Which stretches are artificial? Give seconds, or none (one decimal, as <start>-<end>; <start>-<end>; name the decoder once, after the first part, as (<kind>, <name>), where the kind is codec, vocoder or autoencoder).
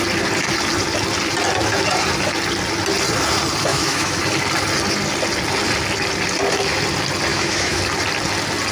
3.7-4.2 (autoencoder, DAC-VAE); 7.3-7.8